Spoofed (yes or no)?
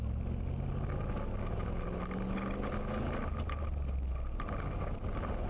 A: no